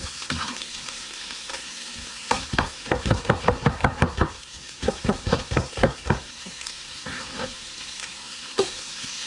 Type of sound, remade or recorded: remade